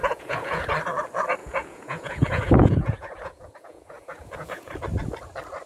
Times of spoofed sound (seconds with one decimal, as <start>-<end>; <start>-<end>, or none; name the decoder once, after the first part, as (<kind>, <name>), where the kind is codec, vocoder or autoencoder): 0.0-0.7 (vocoder, Vocos); 1.4-4.8